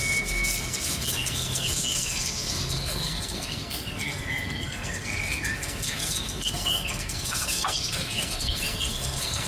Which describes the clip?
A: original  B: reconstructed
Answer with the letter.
B